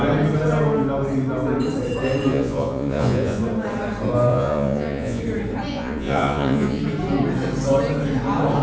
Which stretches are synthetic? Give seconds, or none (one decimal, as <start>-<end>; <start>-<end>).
2.3-3.4; 4.3-5.2; 5.7-6.8